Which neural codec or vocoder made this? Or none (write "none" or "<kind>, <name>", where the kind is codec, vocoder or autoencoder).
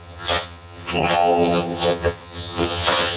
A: vocoder, HiFi-GAN